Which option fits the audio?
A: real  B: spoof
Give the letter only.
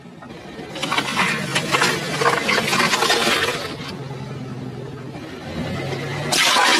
A